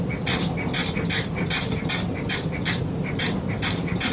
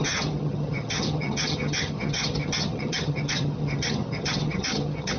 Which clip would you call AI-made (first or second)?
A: second